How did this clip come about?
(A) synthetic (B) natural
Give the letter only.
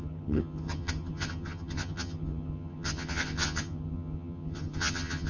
A